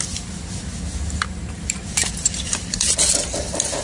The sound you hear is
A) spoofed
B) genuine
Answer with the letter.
B